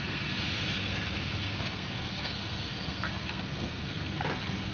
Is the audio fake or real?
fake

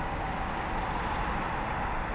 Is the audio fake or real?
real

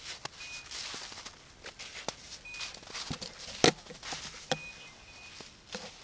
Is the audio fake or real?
real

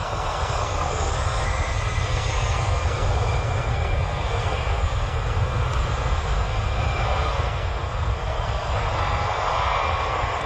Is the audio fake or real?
fake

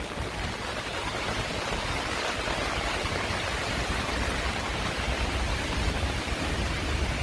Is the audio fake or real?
real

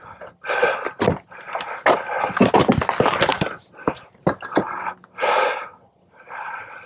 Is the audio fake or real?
real